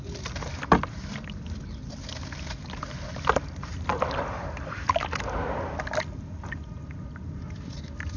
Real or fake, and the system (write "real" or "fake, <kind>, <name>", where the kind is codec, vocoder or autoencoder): real